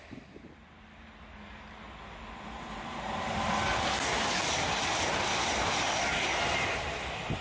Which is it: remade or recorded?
recorded